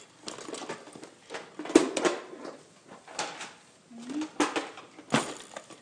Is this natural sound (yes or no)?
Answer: yes